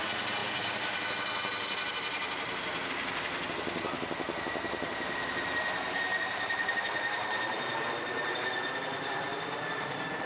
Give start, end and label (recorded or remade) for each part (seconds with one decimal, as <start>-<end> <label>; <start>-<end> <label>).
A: 0.0-0.4 recorded; 0.4-2.9 remade; 2.9-6.1 recorded; 6.1-8.3 remade; 8.3-9.3 recorded; 9.3-10.3 remade